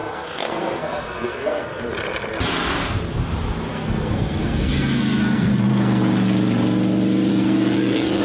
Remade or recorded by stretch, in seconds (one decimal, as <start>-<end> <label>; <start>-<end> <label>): 0.0-1.8 remade; 1.8-3.7 recorded; 3.7-6.0 remade; 6.0-7.3 recorded; 7.3-8.2 remade